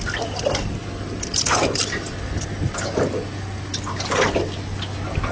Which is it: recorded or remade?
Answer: recorded